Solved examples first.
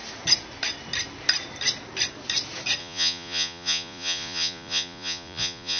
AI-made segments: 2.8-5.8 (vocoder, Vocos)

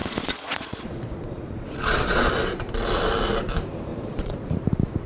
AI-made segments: 0.0-2.3 (vocoder, Vocos); 3.9-4.5

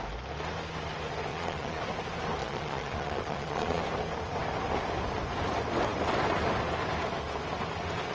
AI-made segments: 1.3-1.8 (vocoder, Vocos); 2.4-3.8

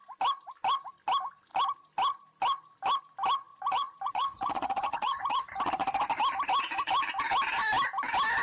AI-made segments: 3.5-5.5 (vocoder, Vocos)

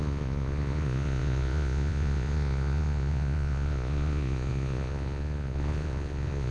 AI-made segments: 0.0-6.5 (vocoder, Vocos)

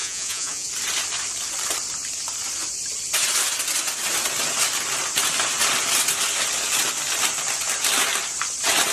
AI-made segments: 0.0-0.7 (vocoder, Vocos)

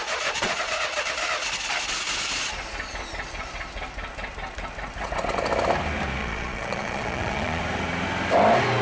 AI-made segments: 0.0-1.0 (vocoder, Vocos); 6.2-7.6

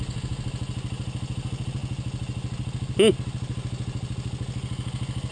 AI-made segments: none